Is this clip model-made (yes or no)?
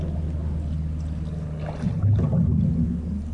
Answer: no